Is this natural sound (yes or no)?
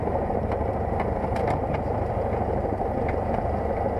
yes